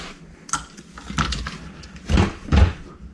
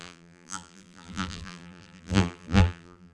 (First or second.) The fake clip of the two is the second